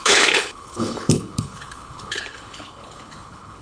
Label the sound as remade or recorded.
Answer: remade